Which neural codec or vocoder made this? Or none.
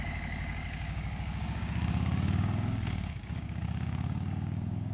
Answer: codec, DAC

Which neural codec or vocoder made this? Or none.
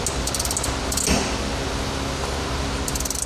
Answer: none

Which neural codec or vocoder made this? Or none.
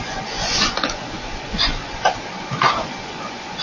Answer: vocoder, Vocos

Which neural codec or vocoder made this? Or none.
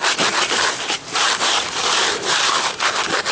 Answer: none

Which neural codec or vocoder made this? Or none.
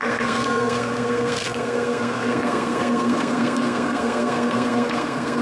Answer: codec, SNAC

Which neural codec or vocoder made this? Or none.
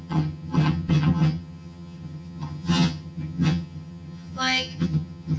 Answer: vocoder, HiFi-GAN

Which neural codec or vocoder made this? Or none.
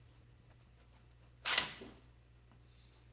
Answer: none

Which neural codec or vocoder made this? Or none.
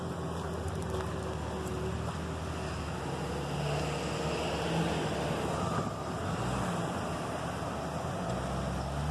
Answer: none